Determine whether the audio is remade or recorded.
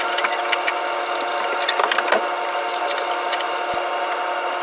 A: recorded